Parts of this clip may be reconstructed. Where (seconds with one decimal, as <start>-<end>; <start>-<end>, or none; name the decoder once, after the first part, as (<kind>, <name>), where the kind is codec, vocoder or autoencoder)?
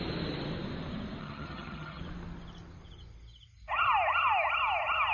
1.2-2.0 (vocoder, HiFi-GAN)